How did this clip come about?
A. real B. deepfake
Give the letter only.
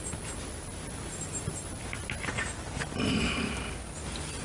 A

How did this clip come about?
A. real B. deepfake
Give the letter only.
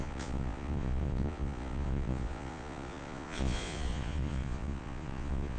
B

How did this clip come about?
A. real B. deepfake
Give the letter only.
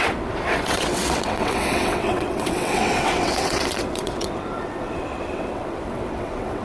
B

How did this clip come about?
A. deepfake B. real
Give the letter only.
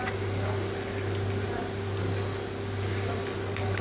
B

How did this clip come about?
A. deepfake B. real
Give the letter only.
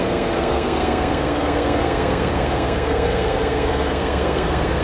A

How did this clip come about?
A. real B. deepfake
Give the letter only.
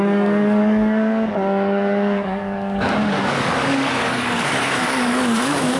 B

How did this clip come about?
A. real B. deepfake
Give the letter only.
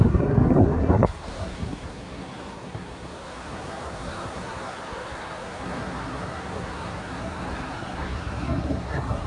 B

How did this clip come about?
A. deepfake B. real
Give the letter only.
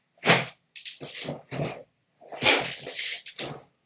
B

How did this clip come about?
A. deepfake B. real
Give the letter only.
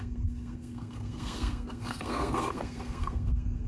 A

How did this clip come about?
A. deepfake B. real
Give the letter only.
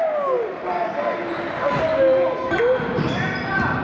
B